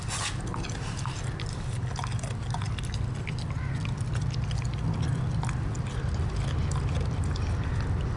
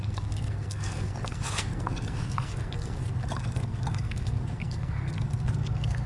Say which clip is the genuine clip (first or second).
first